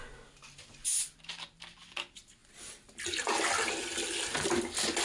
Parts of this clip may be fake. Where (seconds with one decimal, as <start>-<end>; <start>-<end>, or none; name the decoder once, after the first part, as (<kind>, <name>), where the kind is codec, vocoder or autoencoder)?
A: none